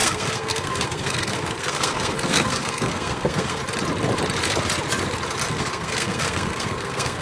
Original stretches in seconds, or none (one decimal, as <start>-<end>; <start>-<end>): 3.6-5.5